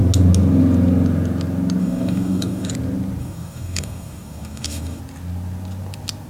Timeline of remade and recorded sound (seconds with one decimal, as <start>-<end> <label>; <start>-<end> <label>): 0.0-1.8 recorded; 1.8-2.7 remade; 2.7-3.2 recorded; 3.2-5.0 remade; 5.0-6.3 recorded